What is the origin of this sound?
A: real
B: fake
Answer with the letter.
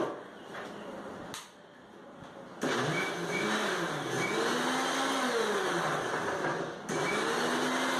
A